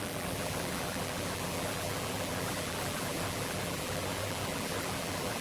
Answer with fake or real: fake